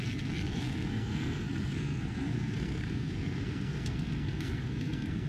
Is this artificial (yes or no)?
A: yes